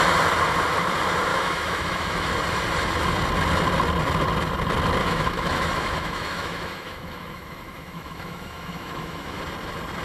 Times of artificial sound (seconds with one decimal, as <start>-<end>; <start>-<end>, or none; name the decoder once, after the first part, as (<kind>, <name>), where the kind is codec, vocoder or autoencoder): 1.3-2.3 (autoencoder, DAC-VAE); 5.0-9.4